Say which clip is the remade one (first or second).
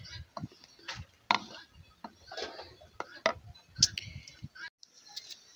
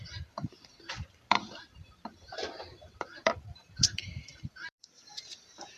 second